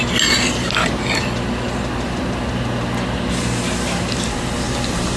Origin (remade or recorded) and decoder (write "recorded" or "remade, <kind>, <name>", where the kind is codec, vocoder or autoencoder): recorded